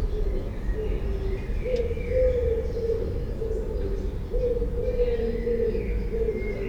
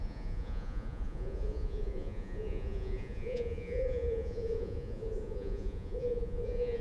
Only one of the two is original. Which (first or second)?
first